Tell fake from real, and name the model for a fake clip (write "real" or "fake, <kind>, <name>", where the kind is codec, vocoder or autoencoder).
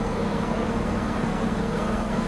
fake, codec, SNAC